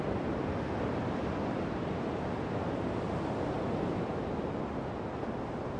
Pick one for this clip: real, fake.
real